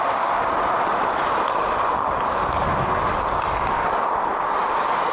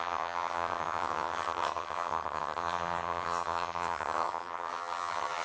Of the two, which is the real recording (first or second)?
first